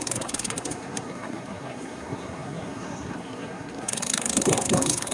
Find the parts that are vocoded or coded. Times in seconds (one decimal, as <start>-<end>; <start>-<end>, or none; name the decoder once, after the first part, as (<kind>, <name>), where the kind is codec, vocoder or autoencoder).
0.0-5.1 (codec, SNAC)